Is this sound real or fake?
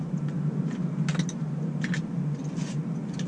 real